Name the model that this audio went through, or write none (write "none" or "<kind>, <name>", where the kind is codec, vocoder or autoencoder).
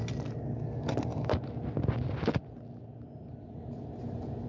none